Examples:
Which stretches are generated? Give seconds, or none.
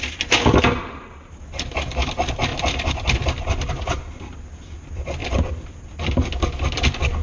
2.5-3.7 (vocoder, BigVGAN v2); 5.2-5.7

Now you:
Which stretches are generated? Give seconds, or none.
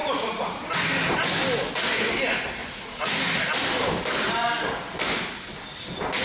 0.0-0.7 (vocoder, Vocos); 2.6-3.1